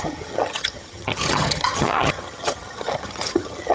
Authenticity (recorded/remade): remade